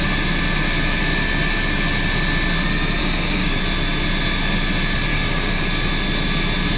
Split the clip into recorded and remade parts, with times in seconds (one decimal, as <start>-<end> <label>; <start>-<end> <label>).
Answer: 0.0-3.0 recorded; 3.0-3.6 remade; 3.6-5.1 recorded; 5.1-5.6 remade; 5.6-6.8 recorded